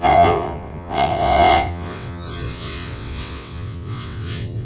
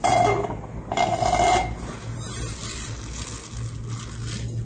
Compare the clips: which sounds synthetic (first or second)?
first